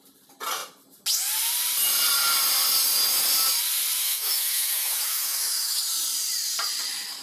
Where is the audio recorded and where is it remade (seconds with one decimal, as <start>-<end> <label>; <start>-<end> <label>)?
0.0-4.0 recorded; 4.0-5.8 remade; 5.8-7.2 recorded